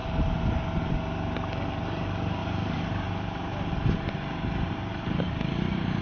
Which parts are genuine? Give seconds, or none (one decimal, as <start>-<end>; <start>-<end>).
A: 0.0-2.4